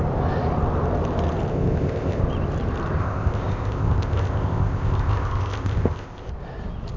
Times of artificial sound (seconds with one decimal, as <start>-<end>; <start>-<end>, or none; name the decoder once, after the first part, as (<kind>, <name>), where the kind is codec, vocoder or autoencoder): 1.5-2.2 (codec, ZipCodec); 3.0-6.3